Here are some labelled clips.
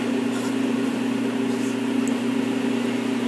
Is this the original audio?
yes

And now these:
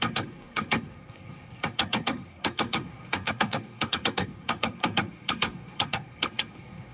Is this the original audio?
no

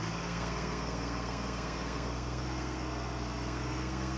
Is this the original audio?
no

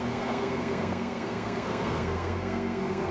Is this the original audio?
no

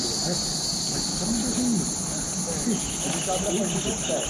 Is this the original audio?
yes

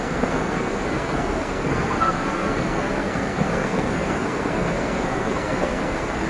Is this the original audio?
no